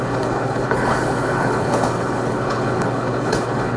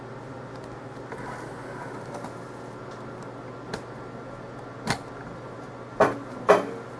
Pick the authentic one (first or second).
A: second